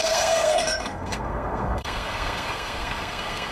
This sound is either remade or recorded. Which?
remade